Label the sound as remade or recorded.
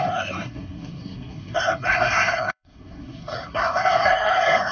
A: remade